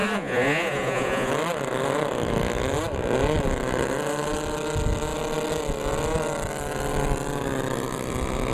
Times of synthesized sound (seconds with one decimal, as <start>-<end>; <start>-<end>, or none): 0.0-1.3